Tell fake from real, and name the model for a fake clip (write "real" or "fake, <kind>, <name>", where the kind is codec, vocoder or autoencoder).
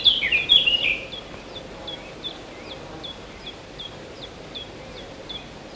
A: fake, vocoder, BigVGAN v2